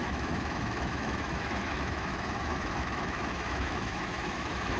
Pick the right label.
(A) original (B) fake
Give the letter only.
B